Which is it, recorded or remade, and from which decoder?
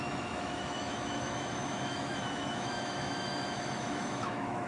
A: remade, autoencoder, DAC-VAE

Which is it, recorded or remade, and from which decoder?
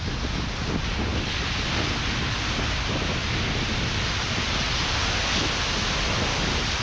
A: recorded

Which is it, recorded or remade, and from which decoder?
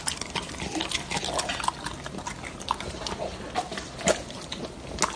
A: recorded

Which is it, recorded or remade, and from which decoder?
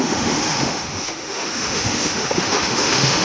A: remade, autoencoder, DAC-VAE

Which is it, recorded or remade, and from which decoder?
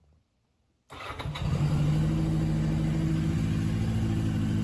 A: recorded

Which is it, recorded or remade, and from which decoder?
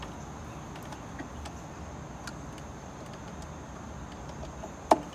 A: recorded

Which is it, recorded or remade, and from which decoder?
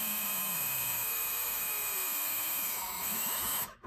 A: remade, autoencoder, DAC-VAE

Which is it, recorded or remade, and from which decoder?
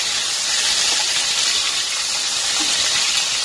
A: recorded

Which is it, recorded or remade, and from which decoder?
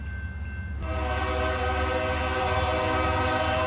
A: recorded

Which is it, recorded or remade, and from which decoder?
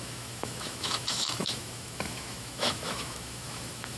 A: remade, autoencoder, DAC-VAE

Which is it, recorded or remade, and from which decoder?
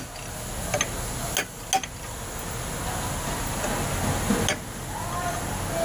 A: recorded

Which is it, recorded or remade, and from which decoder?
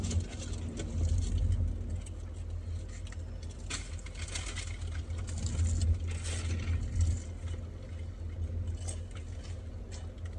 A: recorded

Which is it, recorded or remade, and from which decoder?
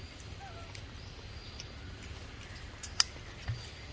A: recorded